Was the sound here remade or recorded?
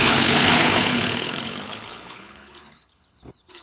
remade